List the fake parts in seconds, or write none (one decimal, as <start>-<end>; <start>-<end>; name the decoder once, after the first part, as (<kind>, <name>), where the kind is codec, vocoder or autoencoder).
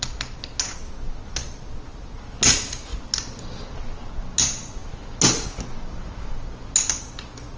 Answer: none